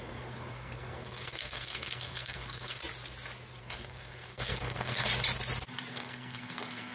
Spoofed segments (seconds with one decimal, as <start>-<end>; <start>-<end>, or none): 0.0-2.8; 3.6-5.1; 5.9-6.9